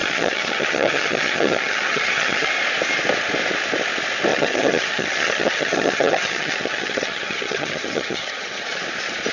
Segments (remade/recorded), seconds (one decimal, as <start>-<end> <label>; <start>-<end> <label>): 0.0-2.5 remade; 2.5-4.3 recorded; 4.3-8.8 remade; 8.8-9.3 recorded